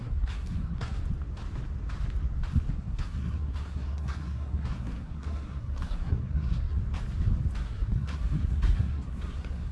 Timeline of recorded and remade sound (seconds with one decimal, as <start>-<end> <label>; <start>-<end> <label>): 0.0-1.0 remade; 1.0-2.7 recorded; 2.7-6.8 remade; 6.8-7.6 recorded; 7.6-9.7 remade